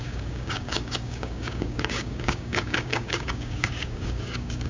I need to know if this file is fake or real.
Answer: fake